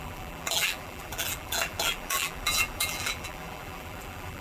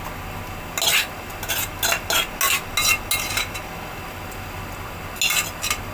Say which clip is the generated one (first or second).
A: first